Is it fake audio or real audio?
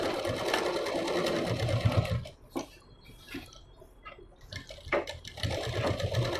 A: real